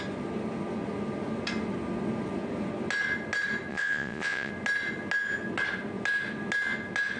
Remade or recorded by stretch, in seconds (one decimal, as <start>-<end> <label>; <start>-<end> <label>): 0.0-3.7 recorded; 3.7-4.5 remade; 4.5-7.2 recorded